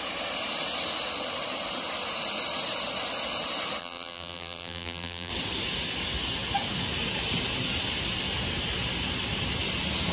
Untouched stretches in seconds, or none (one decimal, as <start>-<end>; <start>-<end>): 0.0-3.8; 5.3-10.1